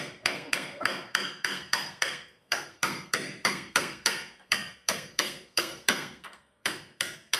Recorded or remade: remade